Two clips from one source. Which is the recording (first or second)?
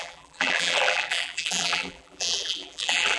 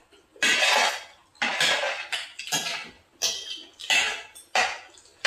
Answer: second